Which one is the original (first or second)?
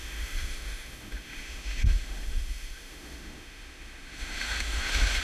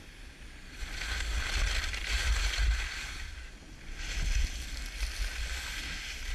second